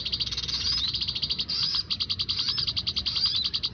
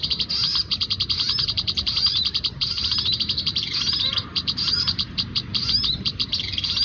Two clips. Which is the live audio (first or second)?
first